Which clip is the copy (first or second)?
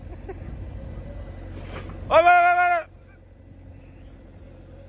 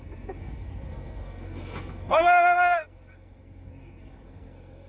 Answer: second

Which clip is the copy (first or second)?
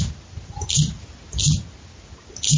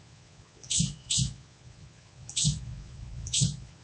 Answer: second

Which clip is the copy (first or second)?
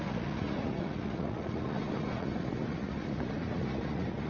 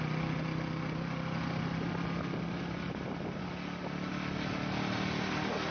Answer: first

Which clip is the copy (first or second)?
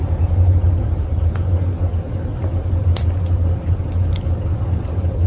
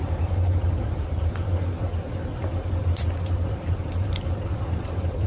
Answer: second